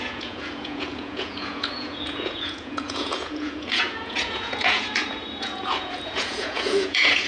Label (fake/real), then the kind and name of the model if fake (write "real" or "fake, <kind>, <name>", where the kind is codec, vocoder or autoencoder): fake, vocoder, Vocos